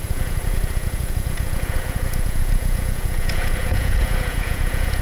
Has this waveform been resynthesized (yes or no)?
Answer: yes